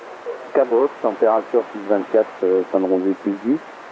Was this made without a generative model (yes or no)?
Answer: no